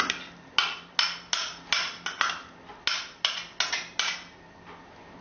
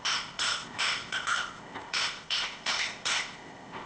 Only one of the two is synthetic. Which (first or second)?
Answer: second